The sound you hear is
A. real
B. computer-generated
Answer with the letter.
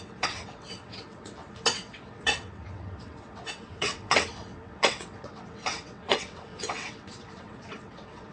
B